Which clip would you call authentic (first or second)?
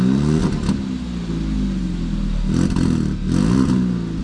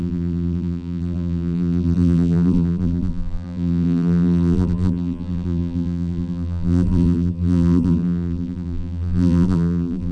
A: first